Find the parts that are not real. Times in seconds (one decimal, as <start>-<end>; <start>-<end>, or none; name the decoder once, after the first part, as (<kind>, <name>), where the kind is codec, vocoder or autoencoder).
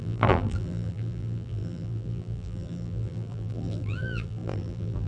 0.0-5.1 (vocoder, BigVGAN v2)